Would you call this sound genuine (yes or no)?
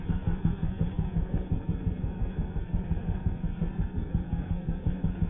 no